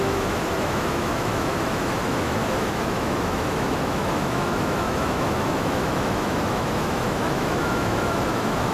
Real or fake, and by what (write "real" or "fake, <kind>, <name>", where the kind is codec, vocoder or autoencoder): fake, autoencoder, DAC-VAE